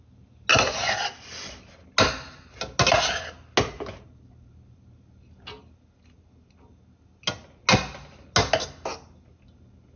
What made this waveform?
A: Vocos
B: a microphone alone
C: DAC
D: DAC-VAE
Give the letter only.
B